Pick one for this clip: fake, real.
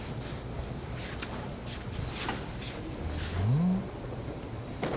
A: real